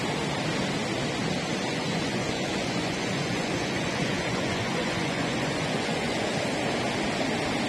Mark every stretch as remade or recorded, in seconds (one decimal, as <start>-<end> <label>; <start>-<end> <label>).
0.0-1.7 recorded; 1.7-6.3 remade; 6.3-7.7 recorded